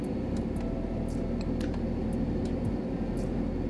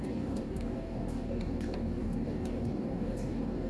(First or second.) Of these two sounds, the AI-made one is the second